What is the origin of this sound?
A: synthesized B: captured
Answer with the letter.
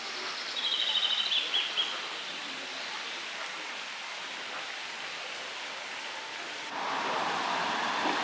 A